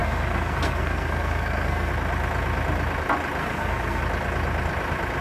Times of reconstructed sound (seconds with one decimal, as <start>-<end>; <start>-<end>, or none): 0.0-1.9; 3.4-4.0